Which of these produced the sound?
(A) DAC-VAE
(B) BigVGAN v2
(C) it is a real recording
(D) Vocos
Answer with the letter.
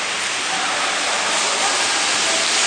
C